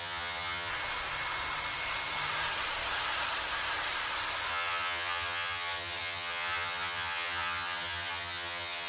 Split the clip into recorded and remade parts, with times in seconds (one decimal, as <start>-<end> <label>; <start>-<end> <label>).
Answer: 0.0-0.7 remade; 0.7-4.5 recorded; 4.5-8.9 remade